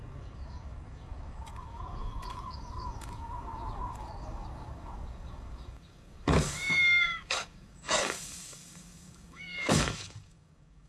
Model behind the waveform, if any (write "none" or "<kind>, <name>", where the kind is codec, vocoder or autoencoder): codec, DAC